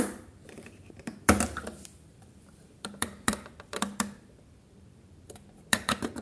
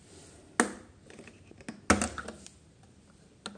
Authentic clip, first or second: second